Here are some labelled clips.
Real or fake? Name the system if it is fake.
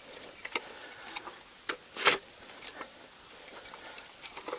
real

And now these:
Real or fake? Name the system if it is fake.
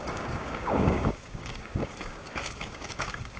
fake, codec, DAC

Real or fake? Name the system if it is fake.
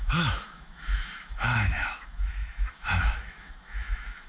fake, autoencoder, DAC-VAE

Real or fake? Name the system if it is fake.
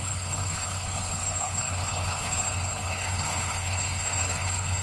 fake, codec, HILCodec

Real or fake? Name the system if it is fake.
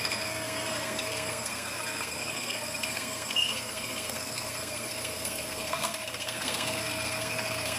fake, codec, SNAC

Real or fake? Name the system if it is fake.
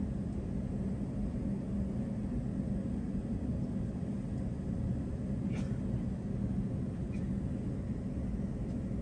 real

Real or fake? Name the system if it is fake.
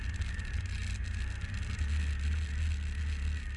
real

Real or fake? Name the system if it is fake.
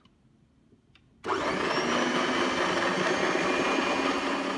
real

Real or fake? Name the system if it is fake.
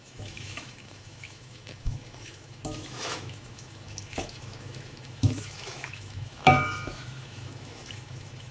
fake, autoencoder, DAC-VAE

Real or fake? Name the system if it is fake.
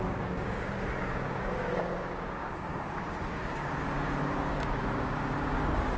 fake, codec, DAC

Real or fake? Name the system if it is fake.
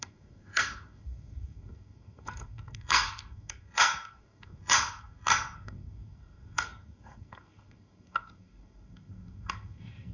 fake, codec, SNAC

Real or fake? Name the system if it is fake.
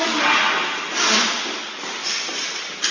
real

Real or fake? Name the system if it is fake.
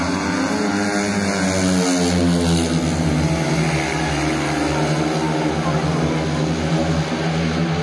real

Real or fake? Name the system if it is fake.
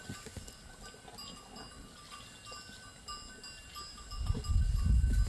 real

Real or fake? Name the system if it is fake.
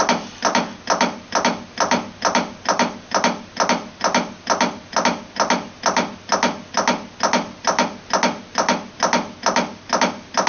real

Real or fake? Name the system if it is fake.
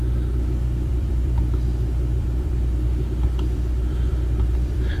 fake, vocoder, BigVGAN v2